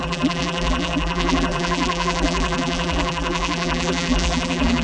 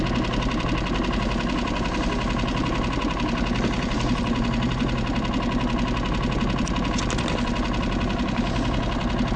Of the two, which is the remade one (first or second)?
first